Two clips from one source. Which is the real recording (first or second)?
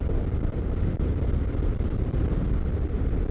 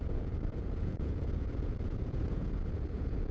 first